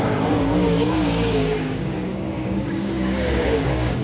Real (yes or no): no